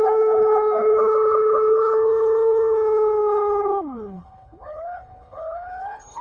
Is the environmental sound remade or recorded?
remade